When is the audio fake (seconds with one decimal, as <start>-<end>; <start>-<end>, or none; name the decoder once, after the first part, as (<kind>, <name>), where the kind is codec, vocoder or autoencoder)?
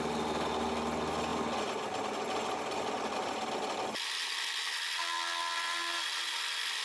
none